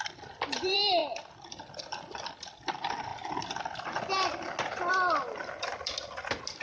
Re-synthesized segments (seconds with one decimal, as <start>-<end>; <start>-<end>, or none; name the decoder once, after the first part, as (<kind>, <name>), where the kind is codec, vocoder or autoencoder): 0.0-1.0 (vocoder, BigVGAN v2); 1.5-3.1; 4.9-5.7